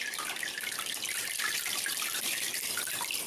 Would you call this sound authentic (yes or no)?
yes